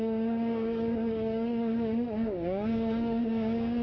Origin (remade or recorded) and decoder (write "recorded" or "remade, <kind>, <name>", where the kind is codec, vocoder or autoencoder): remade, codec, DAC